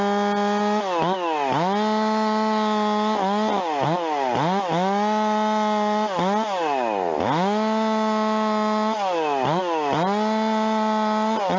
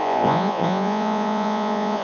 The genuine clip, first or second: first